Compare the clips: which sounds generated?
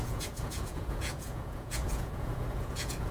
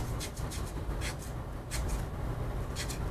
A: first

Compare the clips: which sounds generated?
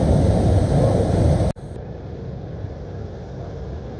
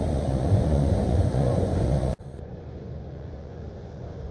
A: second